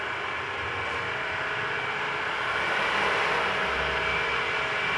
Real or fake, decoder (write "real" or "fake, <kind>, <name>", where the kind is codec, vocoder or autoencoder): real